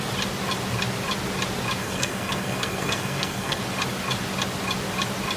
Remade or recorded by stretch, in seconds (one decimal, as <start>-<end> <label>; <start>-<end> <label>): 0.0-1.8 recorded; 1.8-3.6 remade; 3.6-5.4 recorded